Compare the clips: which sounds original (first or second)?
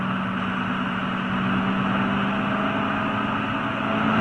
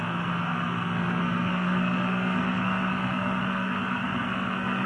first